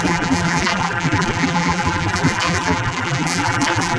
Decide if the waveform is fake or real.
fake